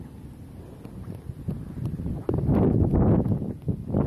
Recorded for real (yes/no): yes